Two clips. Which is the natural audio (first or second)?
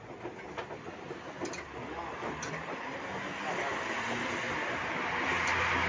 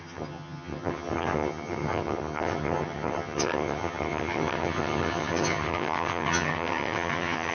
first